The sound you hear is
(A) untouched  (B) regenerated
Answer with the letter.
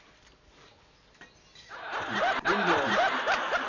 A